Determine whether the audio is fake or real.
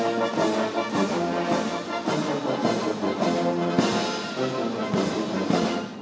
real